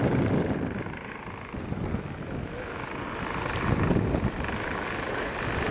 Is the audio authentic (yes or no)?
yes